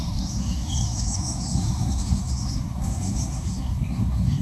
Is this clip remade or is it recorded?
remade